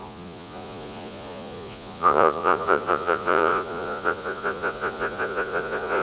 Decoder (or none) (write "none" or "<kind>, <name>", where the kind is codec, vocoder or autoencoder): vocoder, Vocos